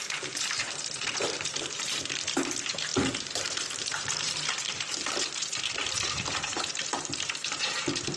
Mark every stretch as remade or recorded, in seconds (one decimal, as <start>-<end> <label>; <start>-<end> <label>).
0.0-8.2 remade